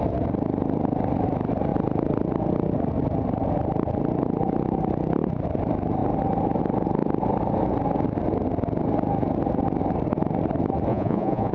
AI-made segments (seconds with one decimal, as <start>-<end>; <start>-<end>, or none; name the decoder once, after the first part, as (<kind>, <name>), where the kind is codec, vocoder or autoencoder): 10.9-11.5 (vocoder, Vocos)